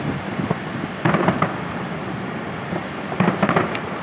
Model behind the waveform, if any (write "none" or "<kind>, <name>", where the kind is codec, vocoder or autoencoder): none